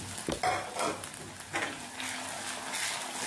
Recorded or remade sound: recorded